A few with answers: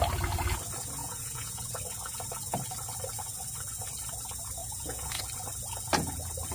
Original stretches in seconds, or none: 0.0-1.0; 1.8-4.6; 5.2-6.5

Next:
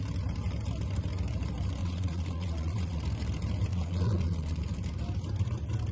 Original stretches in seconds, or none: 0.0-1.8; 3.0-3.7; 4.6-5.9

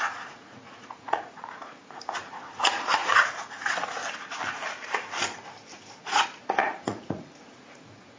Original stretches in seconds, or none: 4.0-6.0

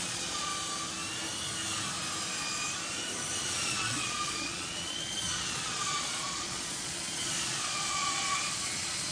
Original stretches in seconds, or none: 0.5-3.4

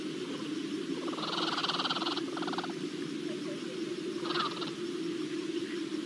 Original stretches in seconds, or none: 0.0-6.1

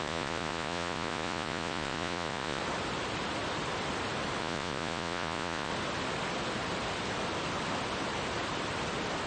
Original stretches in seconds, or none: 2.6-4.4; 5.7-9.3